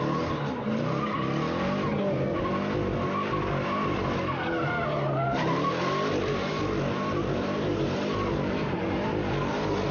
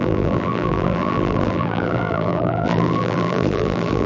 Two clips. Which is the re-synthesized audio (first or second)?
second